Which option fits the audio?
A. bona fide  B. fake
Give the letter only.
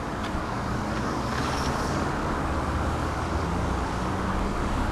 B